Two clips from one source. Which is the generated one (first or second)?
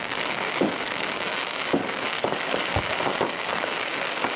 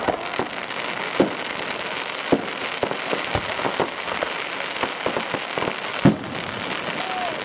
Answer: first